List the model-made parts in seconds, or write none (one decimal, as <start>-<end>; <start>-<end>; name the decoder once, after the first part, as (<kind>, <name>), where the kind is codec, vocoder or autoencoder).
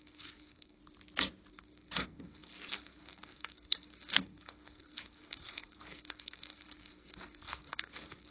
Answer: 0.0-0.8 (codec, SNAC); 1.5-8.3